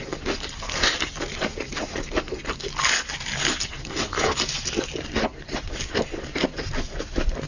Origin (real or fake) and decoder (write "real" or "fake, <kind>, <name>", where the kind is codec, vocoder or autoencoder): real